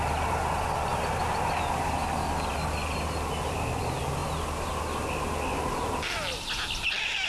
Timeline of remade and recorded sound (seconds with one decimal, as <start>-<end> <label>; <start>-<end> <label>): 0.0-7.3 recorded